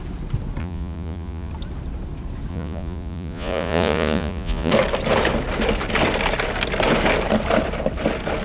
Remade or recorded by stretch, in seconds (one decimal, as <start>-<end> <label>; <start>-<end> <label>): 0.0-0.6 recorded; 0.6-1.5 remade; 1.5-2.5 recorded; 2.5-4.7 remade; 4.7-8.4 recorded